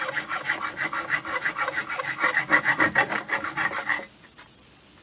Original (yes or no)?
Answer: yes